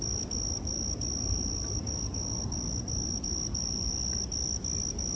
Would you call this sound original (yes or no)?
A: yes